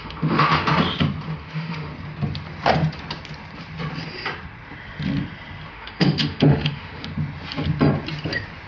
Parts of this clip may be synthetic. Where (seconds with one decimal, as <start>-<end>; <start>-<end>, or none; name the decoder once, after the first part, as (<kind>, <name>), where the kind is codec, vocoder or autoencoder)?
0.0-0.7 (autoencoder, DAC-VAE); 1.4-1.9; 5.7-7.1